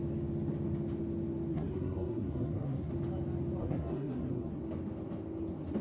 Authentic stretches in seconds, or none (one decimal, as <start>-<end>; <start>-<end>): 0.0-1.5; 2.9-3.6; 4.6-5.8